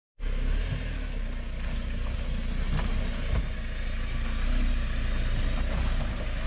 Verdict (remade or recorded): recorded